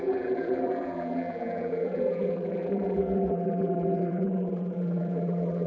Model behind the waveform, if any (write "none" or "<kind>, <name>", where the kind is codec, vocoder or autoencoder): vocoder, BigVGAN v2